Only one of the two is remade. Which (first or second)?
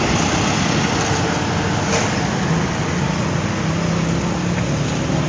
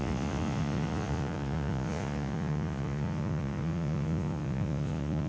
second